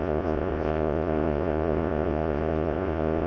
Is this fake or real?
fake